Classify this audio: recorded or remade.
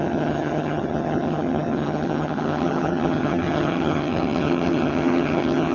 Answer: remade